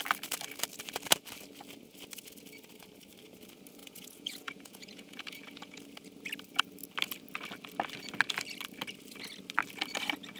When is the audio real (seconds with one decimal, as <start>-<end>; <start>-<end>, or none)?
0.0-3.8; 5.8-10.4